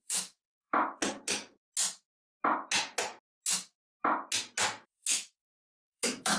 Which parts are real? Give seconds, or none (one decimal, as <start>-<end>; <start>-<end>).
1.0-4.8